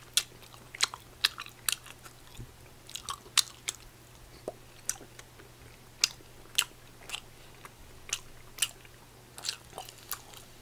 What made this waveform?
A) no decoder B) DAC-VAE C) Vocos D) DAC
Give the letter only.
A